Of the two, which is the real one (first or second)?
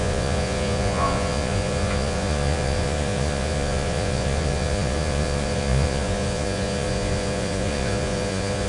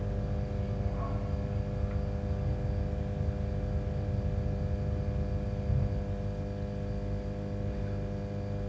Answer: second